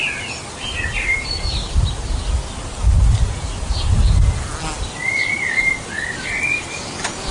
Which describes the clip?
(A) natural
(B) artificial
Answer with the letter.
A